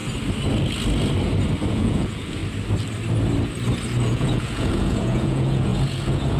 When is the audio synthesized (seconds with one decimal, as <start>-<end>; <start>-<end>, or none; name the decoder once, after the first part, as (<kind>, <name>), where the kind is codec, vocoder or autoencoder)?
1.7-2.4 (vocoder, Vocos); 4.1-6.4